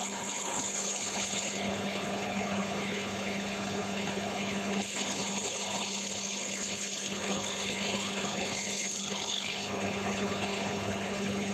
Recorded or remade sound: remade